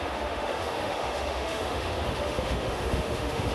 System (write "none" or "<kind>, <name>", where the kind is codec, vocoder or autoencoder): autoencoder, DAC-VAE